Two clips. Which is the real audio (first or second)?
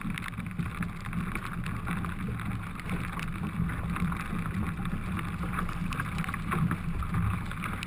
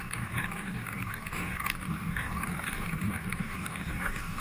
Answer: first